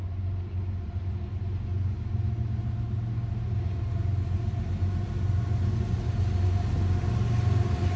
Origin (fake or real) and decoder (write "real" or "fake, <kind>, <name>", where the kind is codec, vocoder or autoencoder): real